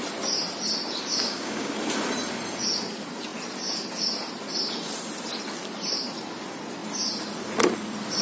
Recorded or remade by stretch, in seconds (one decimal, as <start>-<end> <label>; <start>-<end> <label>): 0.0-1.1 recorded; 1.1-1.7 remade; 1.7-8.2 recorded